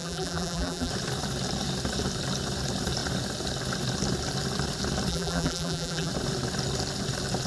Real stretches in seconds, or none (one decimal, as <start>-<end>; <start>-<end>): 0.9-5.1; 6.1-7.5